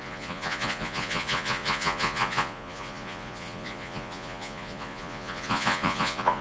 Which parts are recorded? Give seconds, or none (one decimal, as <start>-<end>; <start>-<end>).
none